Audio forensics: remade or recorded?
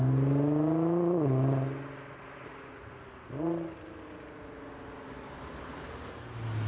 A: recorded